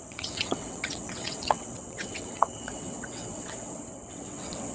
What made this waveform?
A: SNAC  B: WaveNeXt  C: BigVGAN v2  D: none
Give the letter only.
B